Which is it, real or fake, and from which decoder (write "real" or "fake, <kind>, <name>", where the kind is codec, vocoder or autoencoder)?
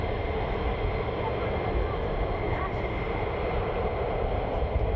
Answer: real